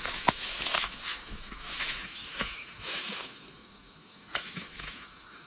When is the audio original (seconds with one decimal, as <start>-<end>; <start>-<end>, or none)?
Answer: none